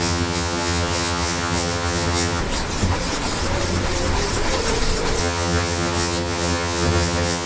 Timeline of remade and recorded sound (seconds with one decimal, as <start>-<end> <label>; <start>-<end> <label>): 0.0-2.4 remade; 2.4-5.2 recorded; 5.2-7.5 remade

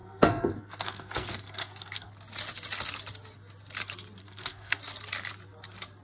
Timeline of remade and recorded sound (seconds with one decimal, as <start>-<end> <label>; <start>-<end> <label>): 0.0-2.1 remade; 2.1-4.2 recorded; 4.2-4.8 remade; 4.8-6.0 recorded

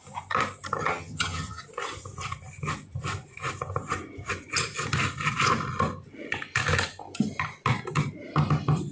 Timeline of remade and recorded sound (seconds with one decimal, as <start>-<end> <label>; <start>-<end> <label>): 0.0-0.8 recorded; 0.8-1.6 remade; 1.6-8.9 recorded

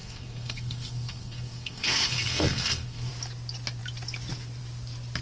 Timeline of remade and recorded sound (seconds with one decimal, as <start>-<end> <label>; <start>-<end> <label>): 0.0-3.1 remade; 3.1-5.2 recorded